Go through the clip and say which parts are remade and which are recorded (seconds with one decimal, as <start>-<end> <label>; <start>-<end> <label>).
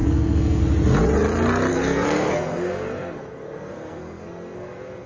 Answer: 0.0-0.6 remade; 0.6-1.7 recorded; 1.7-5.1 remade